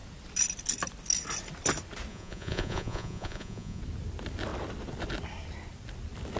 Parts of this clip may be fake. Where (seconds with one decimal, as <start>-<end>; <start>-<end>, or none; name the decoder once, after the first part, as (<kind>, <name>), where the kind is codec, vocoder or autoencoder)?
2.1-3.8 (vocoder, Vocos)